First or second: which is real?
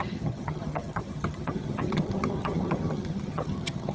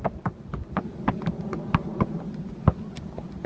second